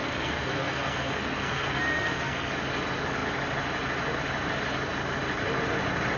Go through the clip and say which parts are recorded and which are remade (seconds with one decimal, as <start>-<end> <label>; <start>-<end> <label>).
0.0-2.5 remade; 2.5-6.2 recorded